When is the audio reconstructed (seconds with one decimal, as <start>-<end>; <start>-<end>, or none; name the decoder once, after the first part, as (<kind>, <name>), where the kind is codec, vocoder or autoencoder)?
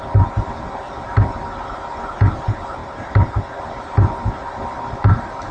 2.8-3.6 (vocoder, BigVGAN v2)